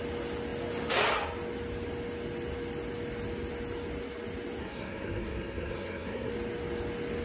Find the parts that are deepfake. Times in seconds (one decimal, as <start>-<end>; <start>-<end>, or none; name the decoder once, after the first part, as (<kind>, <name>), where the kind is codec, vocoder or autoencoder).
4.6-6.3 (codec, SNAC)